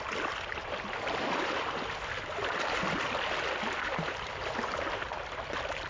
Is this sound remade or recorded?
remade